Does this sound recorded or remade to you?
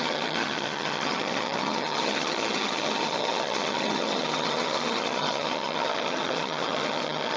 remade